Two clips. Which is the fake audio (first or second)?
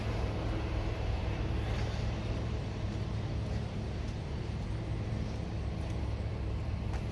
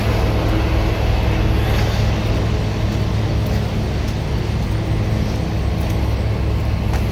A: first